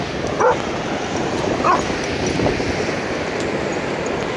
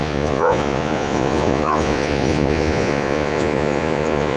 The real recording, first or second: first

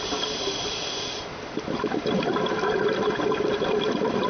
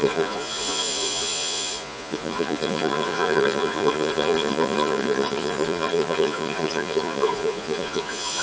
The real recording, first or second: first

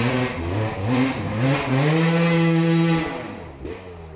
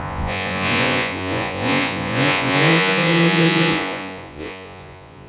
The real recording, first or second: first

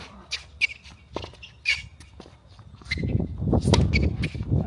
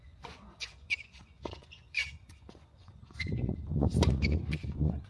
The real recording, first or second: first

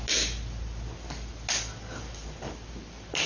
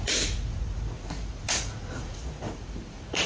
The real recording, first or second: first